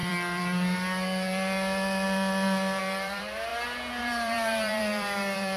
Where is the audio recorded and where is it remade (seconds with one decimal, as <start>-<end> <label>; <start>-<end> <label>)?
0.0-3.5 remade; 3.5-4.0 recorded; 4.0-5.6 remade